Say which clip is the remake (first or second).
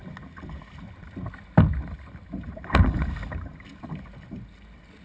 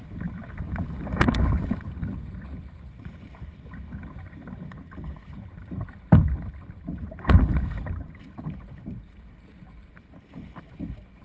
second